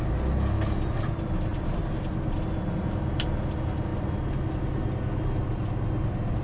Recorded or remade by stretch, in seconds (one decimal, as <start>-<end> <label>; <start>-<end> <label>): 0.0-6.4 recorded